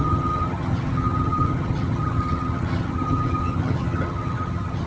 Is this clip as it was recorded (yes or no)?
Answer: no